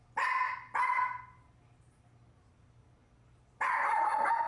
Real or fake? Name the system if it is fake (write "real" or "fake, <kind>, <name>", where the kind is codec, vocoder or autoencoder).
real